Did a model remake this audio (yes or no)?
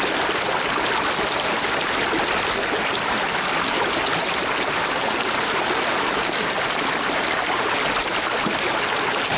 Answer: no